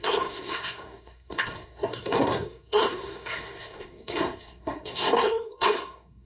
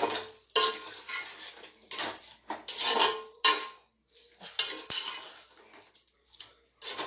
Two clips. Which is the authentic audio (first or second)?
second